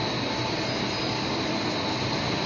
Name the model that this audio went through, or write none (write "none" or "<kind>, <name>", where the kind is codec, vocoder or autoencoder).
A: none